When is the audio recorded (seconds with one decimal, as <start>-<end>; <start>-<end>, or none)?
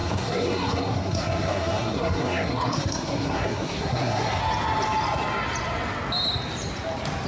4.4-7.3